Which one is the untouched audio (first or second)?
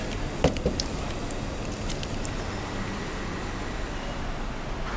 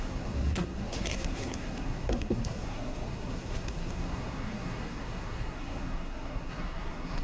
first